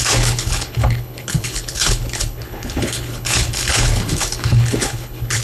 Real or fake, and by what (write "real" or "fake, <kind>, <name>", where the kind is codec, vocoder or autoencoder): fake, codec, HILCodec